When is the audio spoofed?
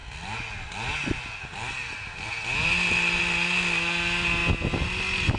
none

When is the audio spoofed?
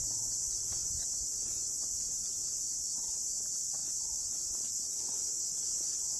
0.8-1.8 (vocoder, Vocos)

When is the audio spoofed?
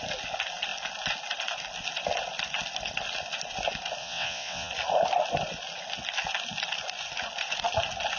4.0-4.7 (vocoder, WaveNeXt)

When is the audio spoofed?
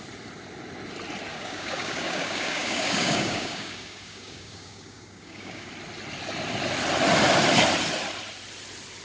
1.3-5.7 (codec, DAC)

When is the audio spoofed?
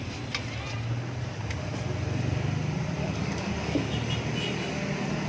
3.0-4.1 (codec, DAC)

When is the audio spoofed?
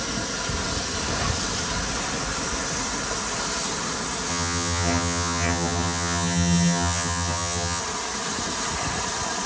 4.3-7.8 (vocoder, HiFi-GAN)